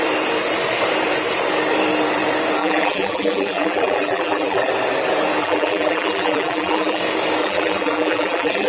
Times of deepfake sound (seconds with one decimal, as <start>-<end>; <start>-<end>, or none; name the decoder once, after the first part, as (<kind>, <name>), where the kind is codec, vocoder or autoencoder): 2.6-4.7 (vocoder, BigVGAN v2); 5.4-7.0; 7.4-8.7